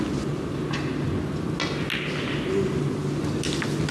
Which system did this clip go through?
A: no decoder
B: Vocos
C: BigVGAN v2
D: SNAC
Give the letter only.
A